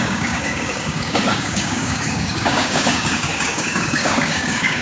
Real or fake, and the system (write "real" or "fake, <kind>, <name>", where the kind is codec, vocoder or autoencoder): fake, codec, DAC